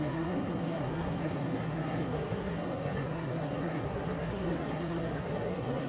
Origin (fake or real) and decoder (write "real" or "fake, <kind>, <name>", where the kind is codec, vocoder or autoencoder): fake, codec, SNAC